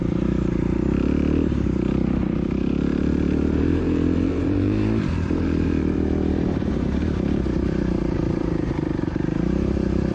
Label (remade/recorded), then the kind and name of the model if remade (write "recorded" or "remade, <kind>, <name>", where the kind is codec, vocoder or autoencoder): remade, vocoder, BigVGAN v2